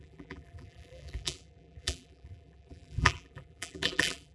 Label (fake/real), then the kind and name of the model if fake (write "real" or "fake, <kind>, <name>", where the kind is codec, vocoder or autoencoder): fake, vocoder, BigVGAN v2